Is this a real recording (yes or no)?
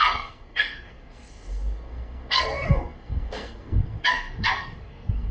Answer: no